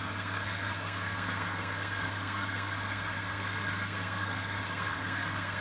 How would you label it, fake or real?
fake